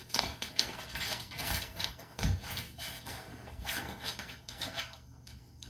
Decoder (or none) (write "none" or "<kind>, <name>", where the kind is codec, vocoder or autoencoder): codec, SNAC